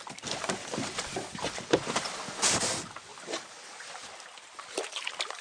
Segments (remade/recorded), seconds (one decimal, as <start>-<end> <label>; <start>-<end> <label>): 0.0-5.4 recorded